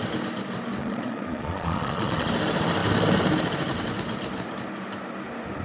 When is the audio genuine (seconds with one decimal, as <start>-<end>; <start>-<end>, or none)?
0.0-0.8; 2.3-5.6

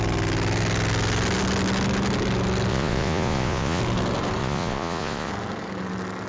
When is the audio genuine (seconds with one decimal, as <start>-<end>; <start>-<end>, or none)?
0.0-2.7; 3.8-4.4; 5.3-6.3

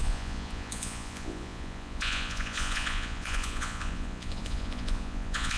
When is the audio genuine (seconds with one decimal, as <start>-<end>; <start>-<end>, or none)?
none

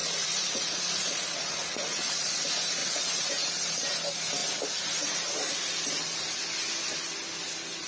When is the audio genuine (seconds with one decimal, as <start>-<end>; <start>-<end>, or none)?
2.4-2.8; 3.3-7.9

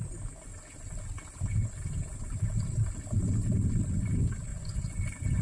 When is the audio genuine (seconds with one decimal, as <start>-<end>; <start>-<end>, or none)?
0.0-4.5

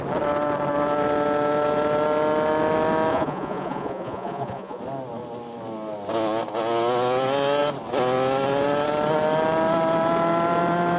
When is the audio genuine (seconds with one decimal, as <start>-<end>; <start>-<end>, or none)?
0.0-3.1; 4.8-11.0